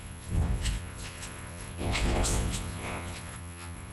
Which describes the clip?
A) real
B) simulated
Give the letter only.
B